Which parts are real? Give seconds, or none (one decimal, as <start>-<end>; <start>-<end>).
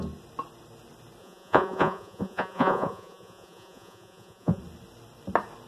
0.0-1.2; 4.6-5.7